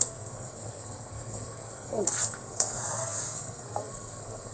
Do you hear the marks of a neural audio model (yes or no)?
yes